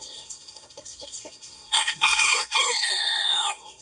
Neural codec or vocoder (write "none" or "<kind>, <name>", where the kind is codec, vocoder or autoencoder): codec, SNAC